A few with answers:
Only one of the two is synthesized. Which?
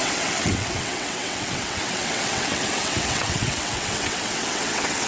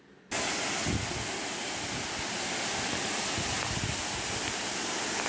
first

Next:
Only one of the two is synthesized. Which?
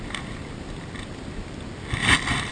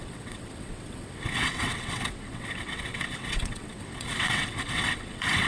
second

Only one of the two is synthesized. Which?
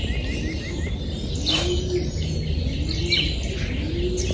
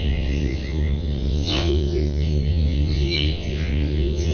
second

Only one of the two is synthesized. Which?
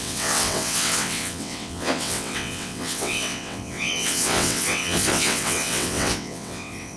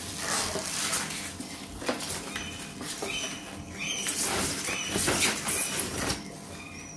first